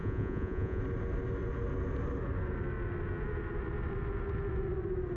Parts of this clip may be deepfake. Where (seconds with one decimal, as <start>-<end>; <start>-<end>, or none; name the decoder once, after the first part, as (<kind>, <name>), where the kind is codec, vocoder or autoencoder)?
0.0-0.8 (vocoder, Vocos)